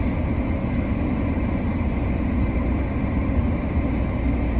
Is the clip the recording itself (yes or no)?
yes